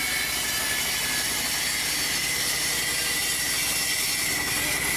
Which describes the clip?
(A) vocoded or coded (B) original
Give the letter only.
B